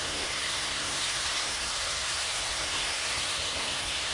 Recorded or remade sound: remade